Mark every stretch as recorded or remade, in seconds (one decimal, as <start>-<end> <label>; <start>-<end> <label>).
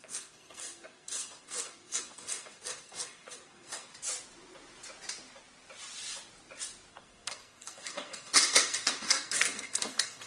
0.0-3.9 remade; 3.9-6.9 recorded; 6.9-10.3 remade